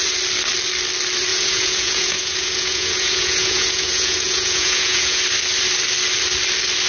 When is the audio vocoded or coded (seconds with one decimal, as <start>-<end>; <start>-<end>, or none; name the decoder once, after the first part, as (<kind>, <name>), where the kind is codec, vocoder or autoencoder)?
1.3-5.2 (vocoder, Vocos)